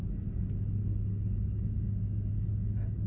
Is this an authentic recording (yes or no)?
yes